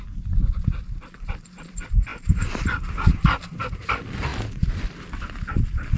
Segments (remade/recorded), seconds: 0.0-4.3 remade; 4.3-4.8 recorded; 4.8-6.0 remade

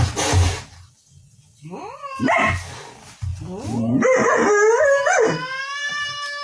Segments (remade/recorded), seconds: 0.0-6.4 recorded

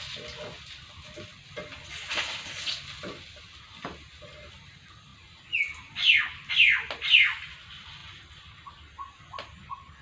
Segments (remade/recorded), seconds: 0.0-10.0 recorded

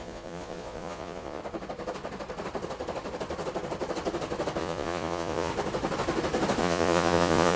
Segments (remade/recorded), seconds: 0.0-1.4 remade; 1.4-4.6 recorded; 4.6-5.5 remade; 5.5-6.6 recorded; 6.6-7.6 remade